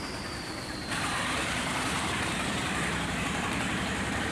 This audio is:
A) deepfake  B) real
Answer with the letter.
A